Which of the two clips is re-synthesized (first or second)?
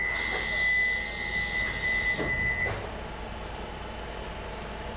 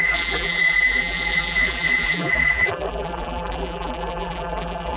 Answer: second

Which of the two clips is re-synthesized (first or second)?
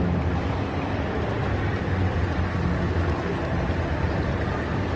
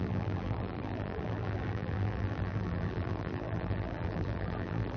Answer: second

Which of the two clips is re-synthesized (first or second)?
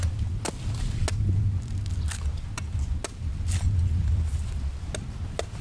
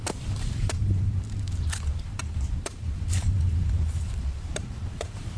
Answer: second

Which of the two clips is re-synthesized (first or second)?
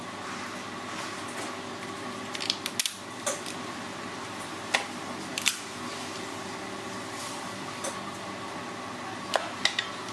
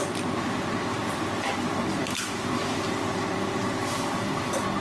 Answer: second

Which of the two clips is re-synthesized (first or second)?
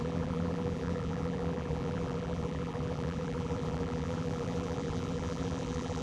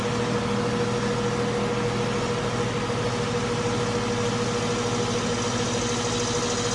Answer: first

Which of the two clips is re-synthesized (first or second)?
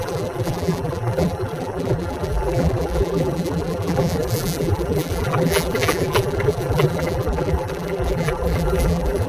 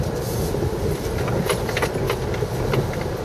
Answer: first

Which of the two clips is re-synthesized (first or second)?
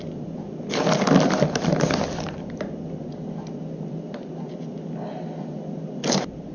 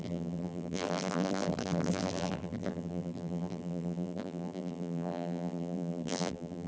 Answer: second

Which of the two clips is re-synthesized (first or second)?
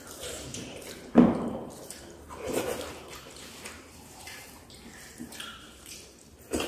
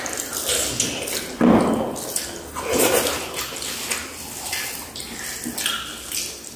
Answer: first